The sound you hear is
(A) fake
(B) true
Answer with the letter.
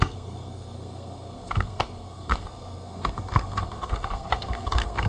A